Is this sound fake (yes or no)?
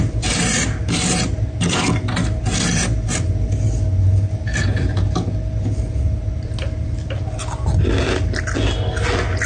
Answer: no